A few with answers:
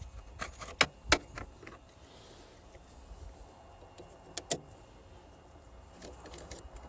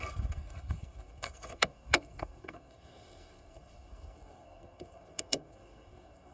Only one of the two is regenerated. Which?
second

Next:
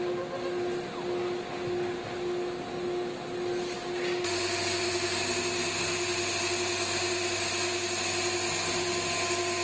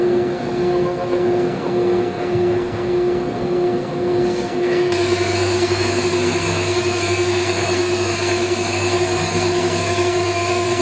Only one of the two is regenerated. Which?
second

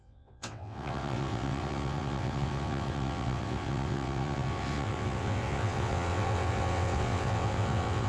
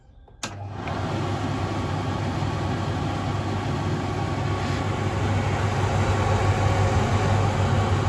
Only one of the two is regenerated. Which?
first